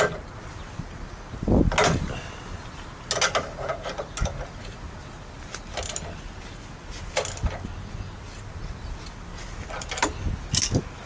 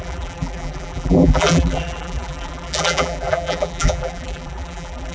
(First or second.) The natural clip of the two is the first